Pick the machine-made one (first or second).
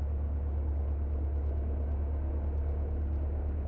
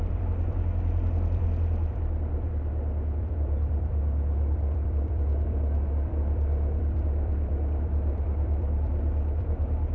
second